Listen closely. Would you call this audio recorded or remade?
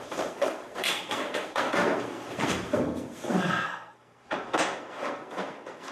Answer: remade